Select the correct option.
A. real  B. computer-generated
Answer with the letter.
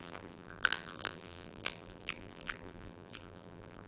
B